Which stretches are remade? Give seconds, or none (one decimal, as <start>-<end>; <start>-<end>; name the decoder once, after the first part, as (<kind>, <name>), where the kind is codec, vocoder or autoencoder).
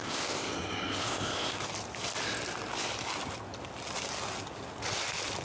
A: 0.0-0.5 (codec, ZipCodec); 1.0-1.6